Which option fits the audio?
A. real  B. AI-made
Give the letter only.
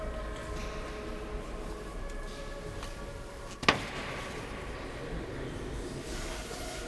A